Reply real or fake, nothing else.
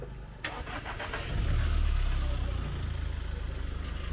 real